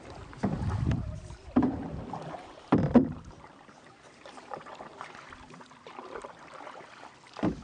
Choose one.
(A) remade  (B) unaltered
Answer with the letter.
A